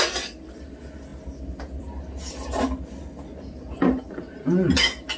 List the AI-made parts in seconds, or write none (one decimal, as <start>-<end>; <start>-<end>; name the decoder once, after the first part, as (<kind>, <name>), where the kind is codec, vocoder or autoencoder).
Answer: none